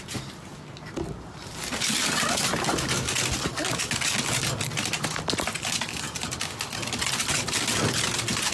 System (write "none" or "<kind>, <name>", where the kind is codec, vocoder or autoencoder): none